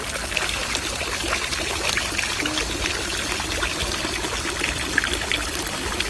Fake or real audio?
real